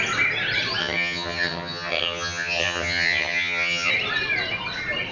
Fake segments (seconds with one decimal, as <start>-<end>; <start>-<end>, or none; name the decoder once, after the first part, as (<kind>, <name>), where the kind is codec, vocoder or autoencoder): 0.8-3.9 (vocoder, HiFi-GAN)